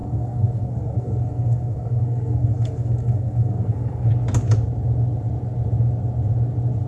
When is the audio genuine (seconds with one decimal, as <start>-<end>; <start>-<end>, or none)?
4.1-6.9